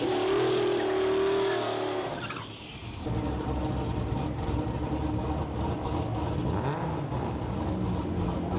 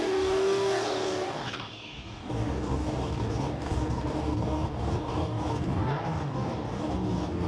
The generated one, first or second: second